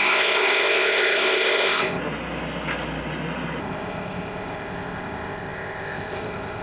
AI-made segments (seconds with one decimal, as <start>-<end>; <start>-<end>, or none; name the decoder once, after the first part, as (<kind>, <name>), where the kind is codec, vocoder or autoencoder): 0.0-2.0 (codec, ZipCodec); 3.6-6.6